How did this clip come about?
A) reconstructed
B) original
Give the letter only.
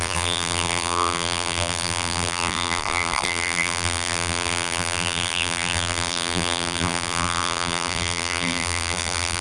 A